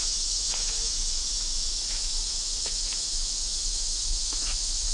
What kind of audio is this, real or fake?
fake